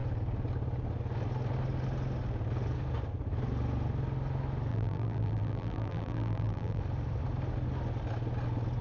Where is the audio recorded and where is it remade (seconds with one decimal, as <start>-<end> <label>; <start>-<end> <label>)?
0.0-4.7 recorded; 4.7-6.8 remade; 6.8-8.8 recorded